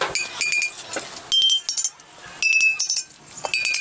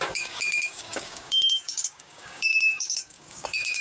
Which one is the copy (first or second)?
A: second